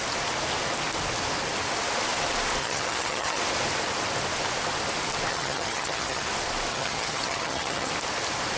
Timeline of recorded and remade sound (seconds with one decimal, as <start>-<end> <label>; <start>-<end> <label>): 0.0-2.6 recorded; 2.6-3.4 remade; 3.4-5.3 recorded; 5.3-6.3 remade; 6.3-6.7 recorded; 6.7-7.9 remade; 7.9-8.6 recorded